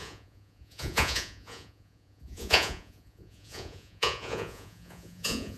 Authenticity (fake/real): fake